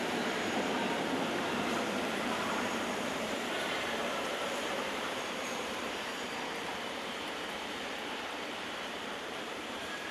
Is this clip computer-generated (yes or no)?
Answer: yes